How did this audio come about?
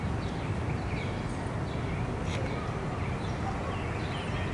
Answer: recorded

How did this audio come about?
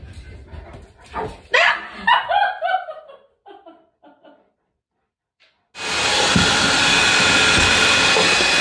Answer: recorded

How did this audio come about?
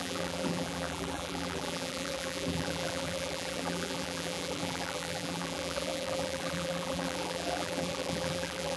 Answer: remade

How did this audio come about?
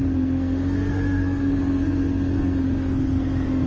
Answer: remade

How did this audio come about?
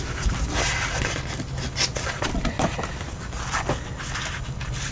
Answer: recorded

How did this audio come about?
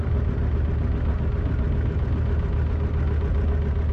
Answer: recorded